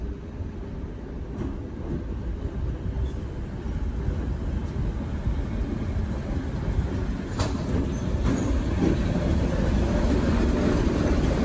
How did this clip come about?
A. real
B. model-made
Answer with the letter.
A